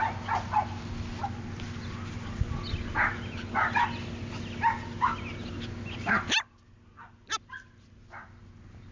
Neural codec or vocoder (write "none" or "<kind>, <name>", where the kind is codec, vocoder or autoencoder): none